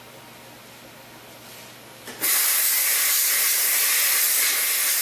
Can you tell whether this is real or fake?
real